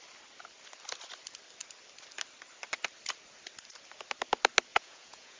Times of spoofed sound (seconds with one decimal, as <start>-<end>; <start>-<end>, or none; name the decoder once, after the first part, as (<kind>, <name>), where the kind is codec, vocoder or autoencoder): 4.7-5.4 (vocoder, Vocos)